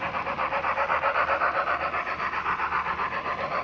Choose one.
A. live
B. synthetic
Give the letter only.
A